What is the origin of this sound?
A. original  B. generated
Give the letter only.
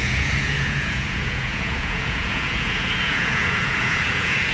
B